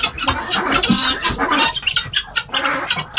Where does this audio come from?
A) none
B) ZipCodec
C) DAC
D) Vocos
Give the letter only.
A